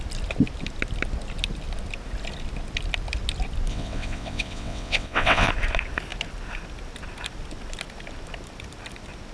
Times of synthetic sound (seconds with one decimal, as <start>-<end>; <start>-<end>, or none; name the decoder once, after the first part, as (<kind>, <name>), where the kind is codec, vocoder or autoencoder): 3.7-5.5 (vocoder, WaveNeXt)